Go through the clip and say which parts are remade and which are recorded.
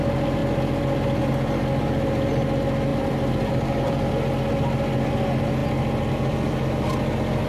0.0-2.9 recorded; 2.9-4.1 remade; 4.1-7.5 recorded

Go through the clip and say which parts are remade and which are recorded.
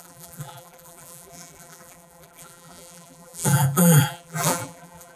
0.0-5.2 remade